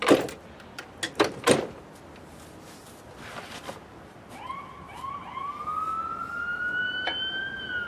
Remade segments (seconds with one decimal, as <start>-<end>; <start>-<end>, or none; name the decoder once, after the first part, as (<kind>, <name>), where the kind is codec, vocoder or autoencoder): none